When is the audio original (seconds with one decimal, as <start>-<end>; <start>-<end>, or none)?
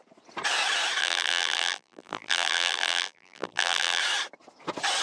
0.0-1.0; 4.0-5.0